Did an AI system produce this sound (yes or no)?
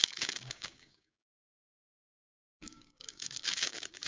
yes